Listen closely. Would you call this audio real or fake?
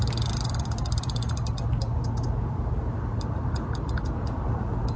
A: real